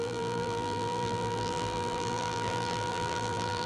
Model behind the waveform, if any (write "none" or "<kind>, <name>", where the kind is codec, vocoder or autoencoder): vocoder, BigVGAN v2